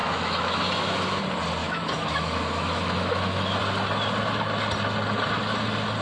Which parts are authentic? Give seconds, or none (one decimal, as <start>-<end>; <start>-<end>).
1.2-1.6; 3.6-6.0